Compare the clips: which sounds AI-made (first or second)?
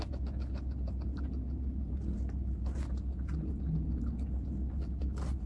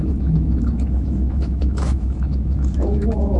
second